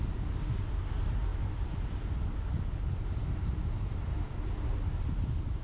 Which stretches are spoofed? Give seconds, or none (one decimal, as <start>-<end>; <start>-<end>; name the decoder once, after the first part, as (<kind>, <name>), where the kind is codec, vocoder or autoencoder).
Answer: none